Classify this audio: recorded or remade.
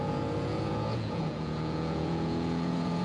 remade